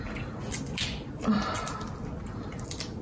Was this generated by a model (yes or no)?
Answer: no